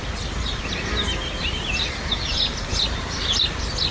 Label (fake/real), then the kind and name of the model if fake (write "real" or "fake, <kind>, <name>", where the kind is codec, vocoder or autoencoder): real